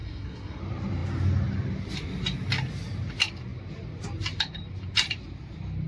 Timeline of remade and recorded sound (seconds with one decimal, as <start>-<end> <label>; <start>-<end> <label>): 0.0-0.6 remade; 0.6-5.9 recorded